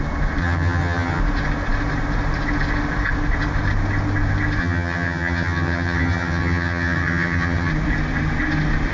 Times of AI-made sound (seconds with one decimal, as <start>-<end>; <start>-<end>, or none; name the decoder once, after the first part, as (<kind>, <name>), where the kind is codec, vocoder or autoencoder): 0.4-1.2 (vocoder, HiFi-GAN); 4.6-7.7